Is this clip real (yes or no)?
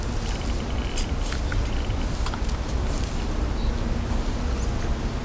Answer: yes